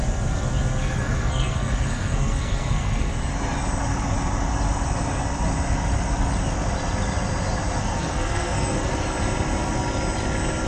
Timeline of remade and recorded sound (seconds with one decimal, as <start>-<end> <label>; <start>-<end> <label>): 0.0-0.8 recorded; 0.8-3.1 remade; 3.1-7.8 recorded; 7.8-8.9 remade; 8.9-10.7 recorded

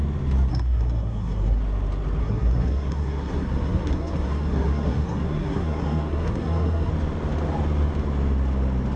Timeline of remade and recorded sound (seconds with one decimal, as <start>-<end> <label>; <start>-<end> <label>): 0.0-0.5 recorded; 0.5-1.6 remade; 1.6-2.2 recorded; 2.2-6.9 remade; 6.9-9.0 recorded